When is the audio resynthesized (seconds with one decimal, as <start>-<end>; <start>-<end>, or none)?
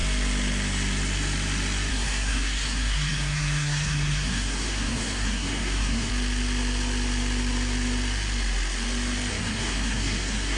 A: 1.9-6.1; 9.3-10.6